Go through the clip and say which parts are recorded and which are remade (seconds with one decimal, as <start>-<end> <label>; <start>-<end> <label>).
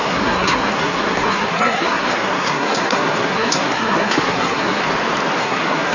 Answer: 0.0-4.8 remade; 4.8-5.4 recorded; 5.4-5.9 remade